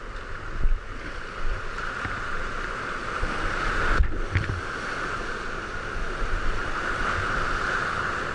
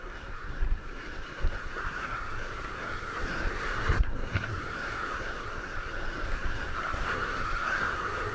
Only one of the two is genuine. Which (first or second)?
first